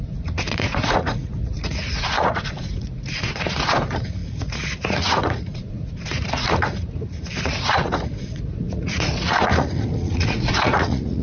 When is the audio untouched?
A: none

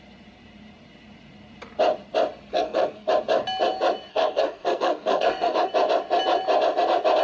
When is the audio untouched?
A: 0.0-2.5; 3.1-4.1; 5.7-7.2